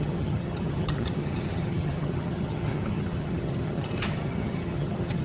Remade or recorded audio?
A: remade